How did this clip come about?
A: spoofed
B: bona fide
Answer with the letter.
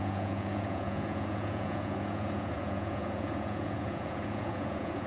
A